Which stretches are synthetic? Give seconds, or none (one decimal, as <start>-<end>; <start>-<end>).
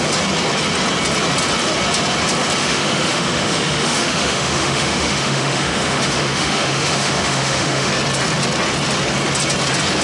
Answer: 2.6-7.9